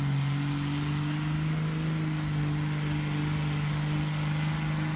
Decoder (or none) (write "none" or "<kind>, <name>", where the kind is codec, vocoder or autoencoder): none